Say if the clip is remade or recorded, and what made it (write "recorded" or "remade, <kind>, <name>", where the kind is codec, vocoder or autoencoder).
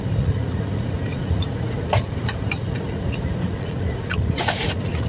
remade, vocoder, Vocos